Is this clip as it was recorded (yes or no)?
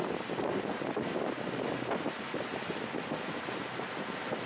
yes